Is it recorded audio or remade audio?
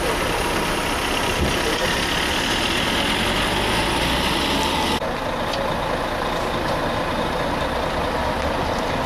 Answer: recorded